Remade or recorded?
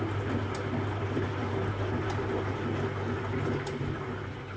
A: recorded